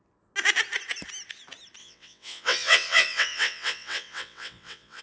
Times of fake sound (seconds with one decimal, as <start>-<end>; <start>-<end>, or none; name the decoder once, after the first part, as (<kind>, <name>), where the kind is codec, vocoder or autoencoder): 1.8-5.0 (vocoder, WaveNeXt)